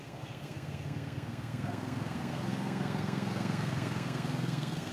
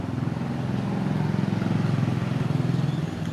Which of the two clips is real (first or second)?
second